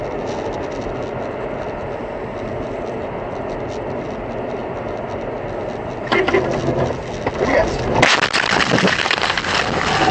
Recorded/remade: recorded